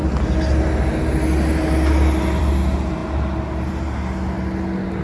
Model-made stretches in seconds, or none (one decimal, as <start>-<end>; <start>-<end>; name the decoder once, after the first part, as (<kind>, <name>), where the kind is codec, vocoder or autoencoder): none